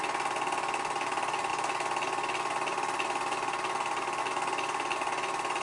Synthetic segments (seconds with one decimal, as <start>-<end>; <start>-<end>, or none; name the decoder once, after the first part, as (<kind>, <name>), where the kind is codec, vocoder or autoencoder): none